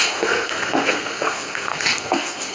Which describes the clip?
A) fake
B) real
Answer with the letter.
A